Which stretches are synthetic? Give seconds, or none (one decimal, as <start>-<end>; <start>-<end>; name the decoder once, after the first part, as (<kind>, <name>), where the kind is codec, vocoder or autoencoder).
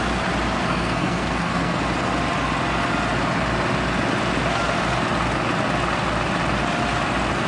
0.6-1.8 (codec, SNAC)